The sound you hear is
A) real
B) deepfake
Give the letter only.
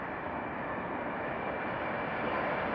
A